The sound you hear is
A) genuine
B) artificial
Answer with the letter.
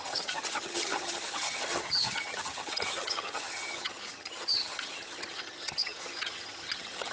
B